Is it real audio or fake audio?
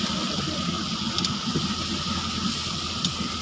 real